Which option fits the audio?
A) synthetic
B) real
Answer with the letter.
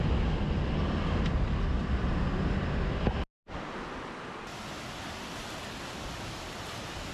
B